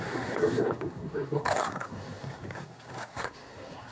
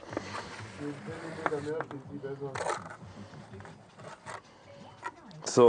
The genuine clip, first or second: second